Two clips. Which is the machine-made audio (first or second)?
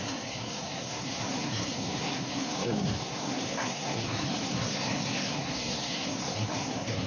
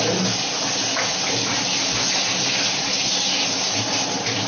first